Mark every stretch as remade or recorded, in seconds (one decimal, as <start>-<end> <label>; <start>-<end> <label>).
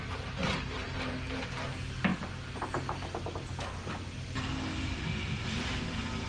0.0-6.3 recorded